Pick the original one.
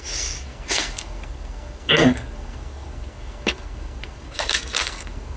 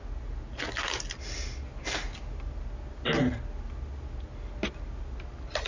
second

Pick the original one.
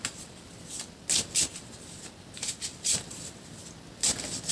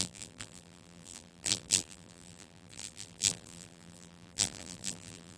first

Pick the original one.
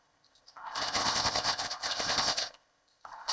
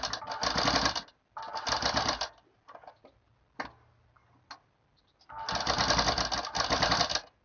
second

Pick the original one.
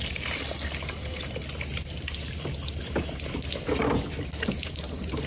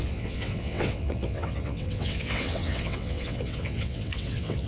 first